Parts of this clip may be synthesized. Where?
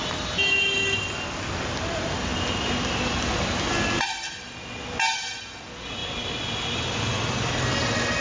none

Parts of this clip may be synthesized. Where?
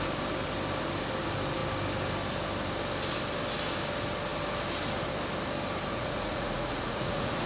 5.9-7.5